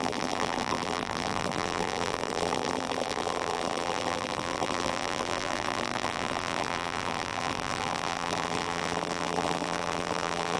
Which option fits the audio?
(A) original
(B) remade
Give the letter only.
B